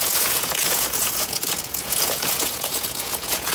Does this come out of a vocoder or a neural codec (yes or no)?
yes